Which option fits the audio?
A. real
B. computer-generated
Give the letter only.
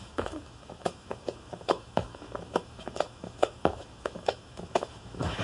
B